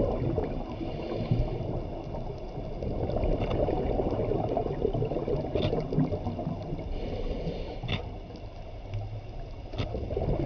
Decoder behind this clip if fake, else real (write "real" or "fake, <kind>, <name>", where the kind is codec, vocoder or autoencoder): real